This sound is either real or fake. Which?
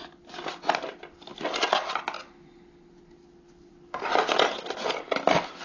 real